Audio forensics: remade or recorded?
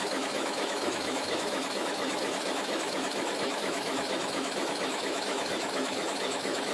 remade